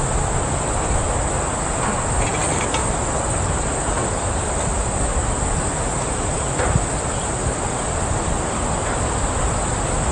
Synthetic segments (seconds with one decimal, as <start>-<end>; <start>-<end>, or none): none

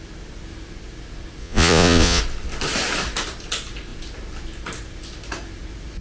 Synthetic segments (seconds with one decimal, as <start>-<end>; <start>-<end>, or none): 1.4-2.2

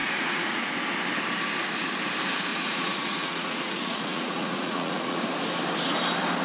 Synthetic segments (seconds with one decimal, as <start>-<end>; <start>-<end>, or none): 0.0-0.7; 2.5-5.2

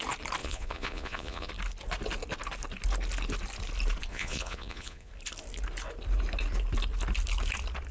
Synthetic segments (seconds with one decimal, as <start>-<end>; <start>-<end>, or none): 0.4-1.5; 4.1-5.1